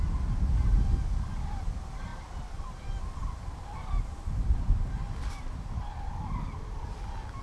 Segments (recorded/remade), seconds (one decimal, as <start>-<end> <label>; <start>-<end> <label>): 0.0-7.4 recorded